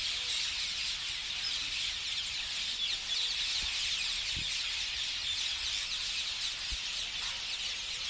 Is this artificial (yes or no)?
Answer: no